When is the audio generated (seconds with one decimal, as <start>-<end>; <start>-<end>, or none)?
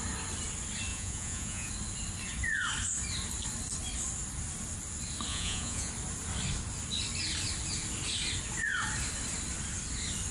0.9-1.7; 5.3-5.9